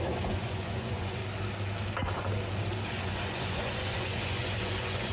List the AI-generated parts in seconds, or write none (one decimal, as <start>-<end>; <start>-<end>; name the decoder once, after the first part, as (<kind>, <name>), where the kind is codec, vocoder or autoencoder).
0.0-1.2 (vocoder, Vocos); 2.9-5.1